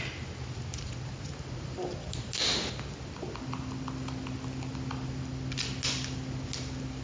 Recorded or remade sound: recorded